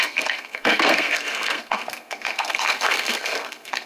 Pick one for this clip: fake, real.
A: fake